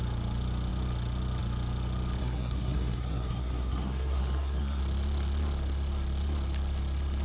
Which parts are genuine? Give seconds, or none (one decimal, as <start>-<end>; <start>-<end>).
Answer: 0.0-2.2; 4.8-7.2